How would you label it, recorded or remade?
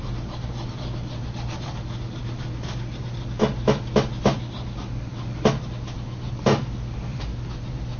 recorded